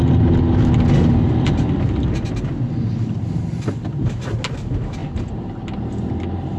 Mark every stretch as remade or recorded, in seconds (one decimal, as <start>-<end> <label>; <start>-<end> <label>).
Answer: 0.0-6.6 recorded

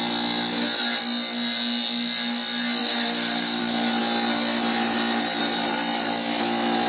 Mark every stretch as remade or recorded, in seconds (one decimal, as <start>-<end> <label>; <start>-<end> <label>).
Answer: 0.0-2.8 recorded; 2.8-3.6 remade; 3.6-6.9 recorded

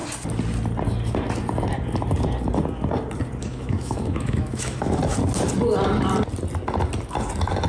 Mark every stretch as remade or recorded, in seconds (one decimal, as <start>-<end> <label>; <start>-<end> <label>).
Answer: 0.0-3.4 recorded; 3.4-5.0 remade; 5.0-7.7 recorded